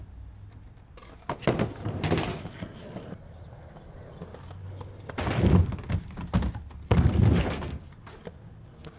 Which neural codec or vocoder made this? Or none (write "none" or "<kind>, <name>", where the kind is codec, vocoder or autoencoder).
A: none